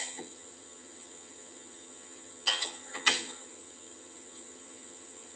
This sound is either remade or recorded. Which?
remade